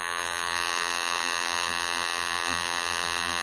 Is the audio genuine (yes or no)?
no